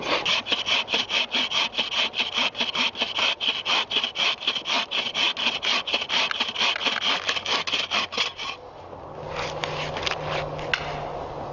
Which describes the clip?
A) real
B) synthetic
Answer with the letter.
A